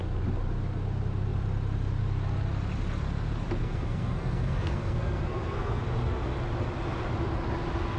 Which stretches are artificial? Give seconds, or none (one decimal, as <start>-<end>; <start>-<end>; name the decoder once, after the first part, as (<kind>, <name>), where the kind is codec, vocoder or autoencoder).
3.6-5.8 (codec, SNAC)